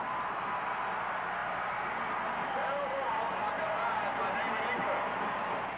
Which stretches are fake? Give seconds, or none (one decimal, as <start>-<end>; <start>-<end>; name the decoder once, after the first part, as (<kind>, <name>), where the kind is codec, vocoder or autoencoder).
none